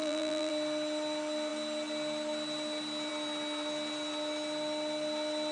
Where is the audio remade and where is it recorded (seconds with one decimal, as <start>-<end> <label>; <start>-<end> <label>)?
0.0-0.5 remade; 0.5-5.5 recorded